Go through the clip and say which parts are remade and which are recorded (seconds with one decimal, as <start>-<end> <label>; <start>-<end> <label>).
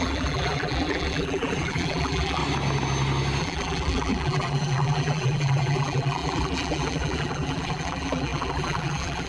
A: 0.0-2.4 remade; 2.4-3.4 recorded; 3.4-9.3 remade